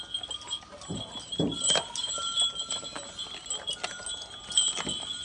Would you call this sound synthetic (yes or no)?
no